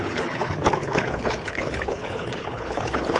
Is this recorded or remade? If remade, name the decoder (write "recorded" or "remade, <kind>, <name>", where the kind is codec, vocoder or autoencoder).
remade, codec, HILCodec